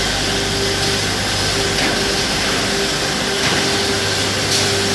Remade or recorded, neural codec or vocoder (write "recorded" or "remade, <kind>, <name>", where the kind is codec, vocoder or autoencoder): recorded